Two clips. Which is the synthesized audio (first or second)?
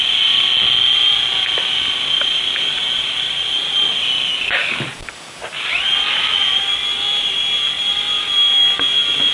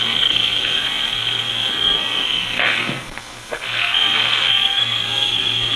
second